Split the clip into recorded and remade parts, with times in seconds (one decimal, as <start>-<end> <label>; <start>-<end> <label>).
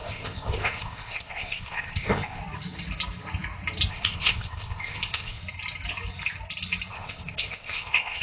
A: 0.0-2.4 remade; 2.4-3.9 recorded; 3.9-5.4 remade; 5.4-6.9 recorded; 6.9-8.2 remade